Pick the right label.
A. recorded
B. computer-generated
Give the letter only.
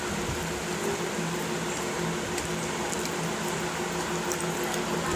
B